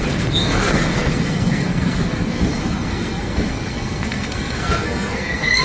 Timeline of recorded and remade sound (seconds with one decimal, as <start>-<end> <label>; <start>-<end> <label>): 0.0-5.6 remade